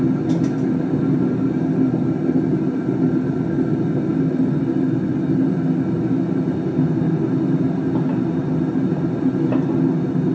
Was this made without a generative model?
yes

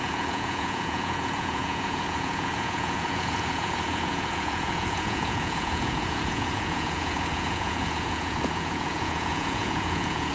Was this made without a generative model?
no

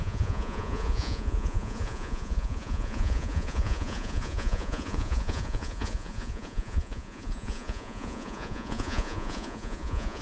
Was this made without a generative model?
no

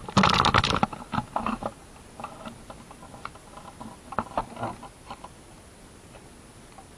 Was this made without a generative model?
yes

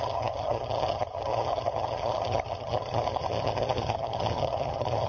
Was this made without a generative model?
no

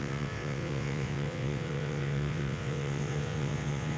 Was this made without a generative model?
no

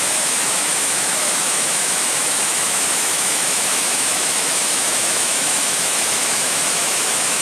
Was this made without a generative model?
no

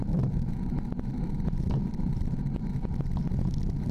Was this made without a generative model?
yes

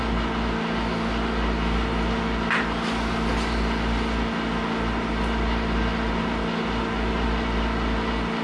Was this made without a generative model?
yes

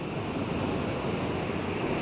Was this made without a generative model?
yes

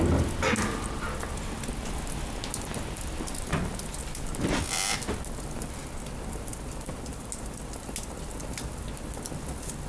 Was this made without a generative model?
yes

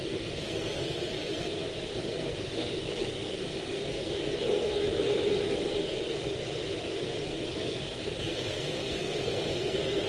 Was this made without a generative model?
no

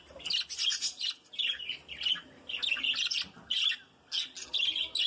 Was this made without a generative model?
yes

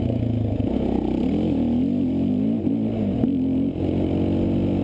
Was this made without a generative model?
yes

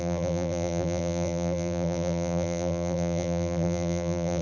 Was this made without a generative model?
no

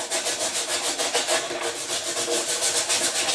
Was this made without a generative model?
yes